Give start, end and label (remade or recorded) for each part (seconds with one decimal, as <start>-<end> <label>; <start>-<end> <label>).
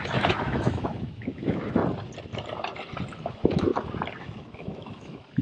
0.0-1.8 remade; 1.8-3.3 recorded; 3.3-3.7 remade; 3.7-4.2 recorded; 4.2-5.4 remade